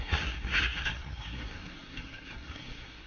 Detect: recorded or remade remade